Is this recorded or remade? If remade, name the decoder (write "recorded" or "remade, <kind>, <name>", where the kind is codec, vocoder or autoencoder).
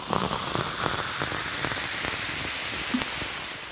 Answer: recorded